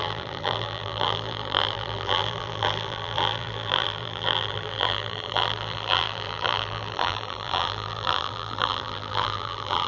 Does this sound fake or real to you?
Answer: fake